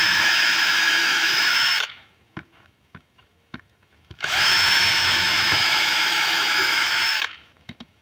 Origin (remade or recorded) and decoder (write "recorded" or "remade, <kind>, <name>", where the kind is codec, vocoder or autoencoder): remade, autoencoder, DAC-VAE